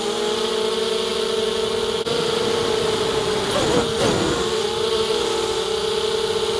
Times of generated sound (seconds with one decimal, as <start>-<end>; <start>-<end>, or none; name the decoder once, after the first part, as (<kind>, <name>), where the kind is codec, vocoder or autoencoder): 1.1-5.1 (vocoder, BigVGAN v2)